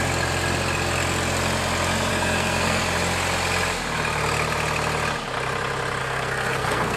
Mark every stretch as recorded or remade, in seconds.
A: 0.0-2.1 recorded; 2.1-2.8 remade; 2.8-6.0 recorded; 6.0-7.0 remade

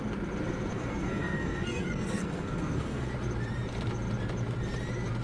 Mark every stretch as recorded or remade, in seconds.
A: 0.0-0.7 recorded; 0.7-3.1 remade; 3.1-5.2 recorded

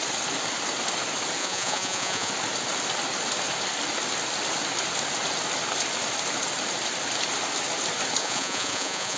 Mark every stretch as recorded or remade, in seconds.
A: 0.0-1.4 recorded; 1.4-2.3 remade; 2.3-8.2 recorded; 8.2-9.2 remade

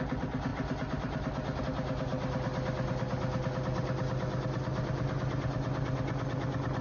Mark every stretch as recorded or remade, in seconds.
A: 0.0-6.8 recorded

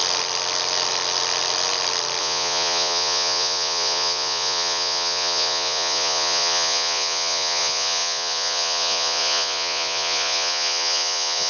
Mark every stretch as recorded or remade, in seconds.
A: 0.0-2.2 recorded; 2.2-11.5 remade

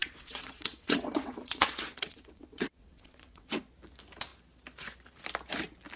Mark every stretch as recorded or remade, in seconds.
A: 0.0-3.6 remade; 3.6-6.0 recorded

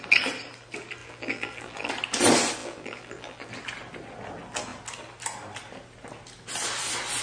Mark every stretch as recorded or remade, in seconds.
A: 0.0-1.0 recorded; 1.0-1.9 remade; 1.9-2.6 recorded; 2.6-3.5 remade; 3.5-7.2 recorded